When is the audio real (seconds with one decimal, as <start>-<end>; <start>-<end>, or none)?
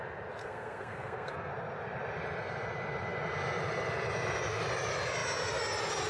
0.0-0.4; 1.5-6.1